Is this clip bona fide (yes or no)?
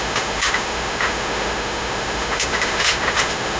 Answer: no